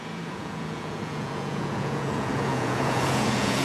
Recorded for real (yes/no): no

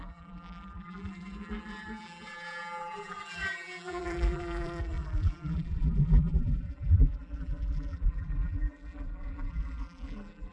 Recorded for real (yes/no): no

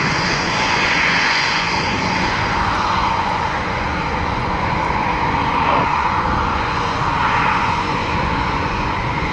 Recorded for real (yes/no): no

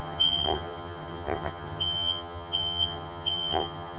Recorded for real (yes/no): no